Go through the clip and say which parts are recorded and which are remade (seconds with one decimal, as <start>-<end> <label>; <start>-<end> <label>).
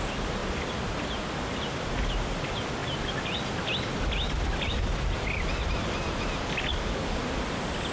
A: 0.0-6.7 recorded; 6.7-7.2 remade; 7.2-7.9 recorded